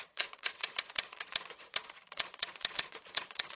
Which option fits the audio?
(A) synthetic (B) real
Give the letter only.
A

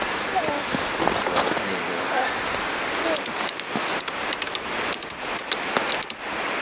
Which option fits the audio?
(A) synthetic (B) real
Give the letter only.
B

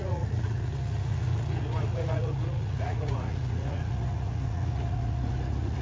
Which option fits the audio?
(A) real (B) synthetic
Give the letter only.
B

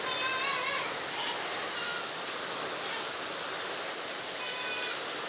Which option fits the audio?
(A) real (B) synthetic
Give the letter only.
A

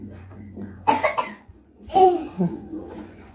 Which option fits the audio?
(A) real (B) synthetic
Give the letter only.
B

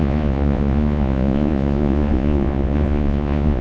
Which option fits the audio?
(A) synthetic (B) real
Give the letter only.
A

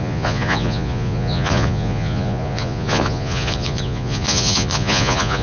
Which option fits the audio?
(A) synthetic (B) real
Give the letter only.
A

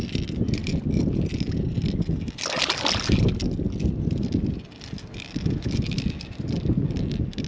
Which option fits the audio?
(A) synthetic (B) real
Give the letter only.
B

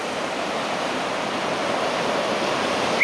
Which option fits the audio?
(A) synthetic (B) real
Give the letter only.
B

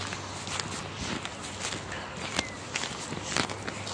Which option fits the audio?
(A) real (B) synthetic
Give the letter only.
A